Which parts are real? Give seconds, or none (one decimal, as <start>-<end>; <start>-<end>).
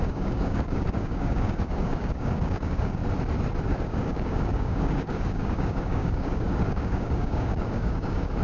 3.0-3.6